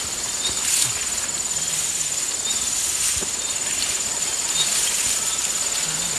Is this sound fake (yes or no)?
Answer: no